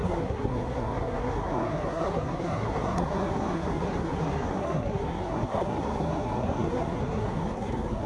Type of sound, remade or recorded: remade